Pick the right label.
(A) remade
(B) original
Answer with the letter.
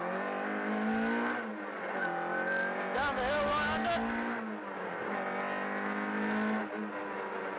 B